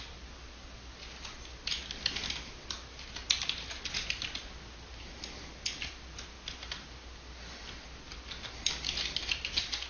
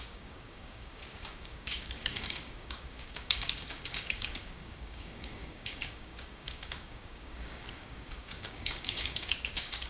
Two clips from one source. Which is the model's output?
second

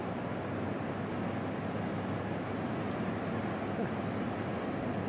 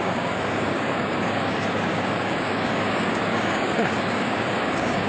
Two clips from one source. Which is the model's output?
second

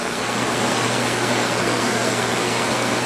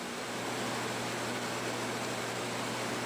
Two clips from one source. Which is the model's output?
first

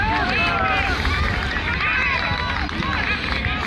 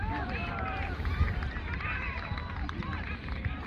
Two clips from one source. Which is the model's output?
second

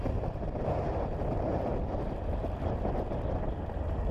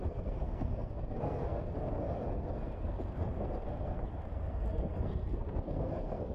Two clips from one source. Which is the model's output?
second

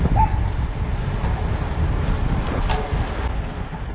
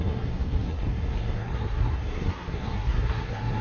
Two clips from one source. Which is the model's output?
second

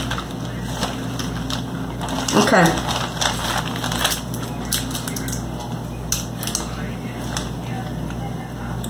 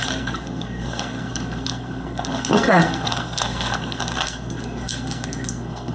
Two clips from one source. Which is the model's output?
second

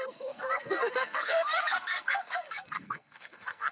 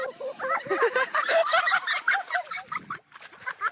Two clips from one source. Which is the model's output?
first